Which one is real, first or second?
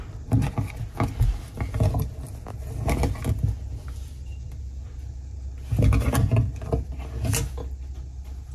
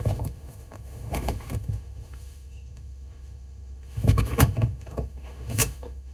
first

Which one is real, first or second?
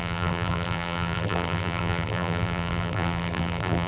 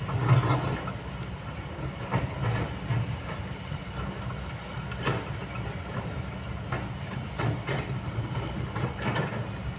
second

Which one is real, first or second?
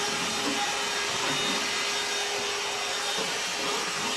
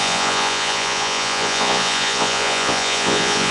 first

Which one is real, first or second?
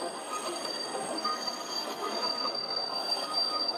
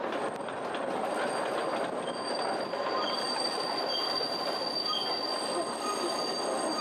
second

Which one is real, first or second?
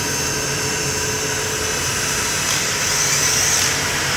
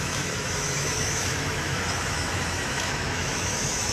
first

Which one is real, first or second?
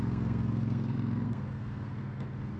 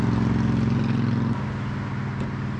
second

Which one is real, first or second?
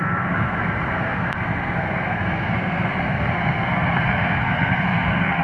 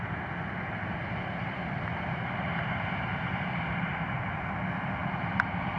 second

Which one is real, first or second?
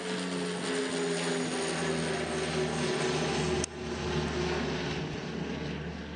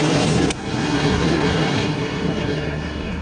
first